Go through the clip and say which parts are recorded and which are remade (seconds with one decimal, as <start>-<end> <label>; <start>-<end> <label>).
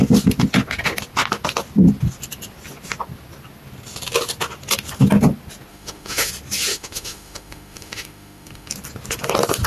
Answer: 0.0-5.7 recorded; 5.7-6.3 remade; 6.3-6.7 recorded; 6.7-8.7 remade; 8.7-9.7 recorded